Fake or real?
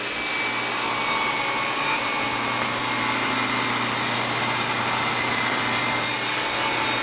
real